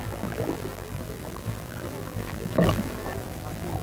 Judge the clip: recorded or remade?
remade